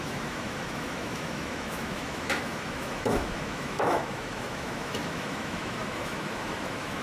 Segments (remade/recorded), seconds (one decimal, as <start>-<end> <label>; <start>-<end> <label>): 0.0-7.0 remade